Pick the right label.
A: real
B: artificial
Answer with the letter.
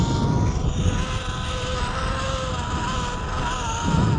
A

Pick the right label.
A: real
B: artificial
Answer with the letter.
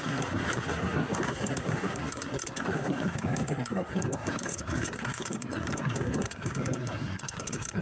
B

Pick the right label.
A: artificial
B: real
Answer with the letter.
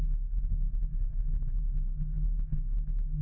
A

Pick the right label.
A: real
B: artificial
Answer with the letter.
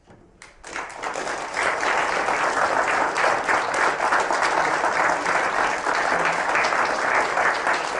A